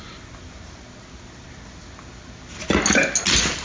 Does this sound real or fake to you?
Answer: real